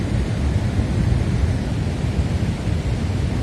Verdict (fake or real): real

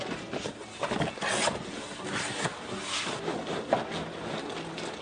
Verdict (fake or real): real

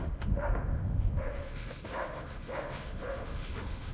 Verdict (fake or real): fake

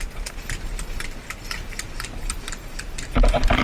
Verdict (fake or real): real